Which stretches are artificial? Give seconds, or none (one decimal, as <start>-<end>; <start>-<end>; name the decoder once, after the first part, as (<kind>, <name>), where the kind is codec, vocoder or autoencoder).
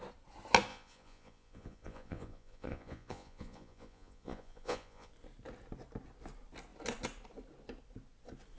0.7-5.1 (vocoder, Vocos)